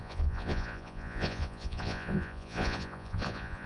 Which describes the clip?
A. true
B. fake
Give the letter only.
B